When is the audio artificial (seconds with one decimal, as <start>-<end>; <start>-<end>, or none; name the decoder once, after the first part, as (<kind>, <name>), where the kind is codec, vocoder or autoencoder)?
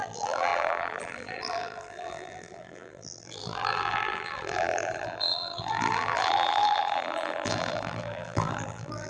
0.0-9.1 (vocoder, BigVGAN v2)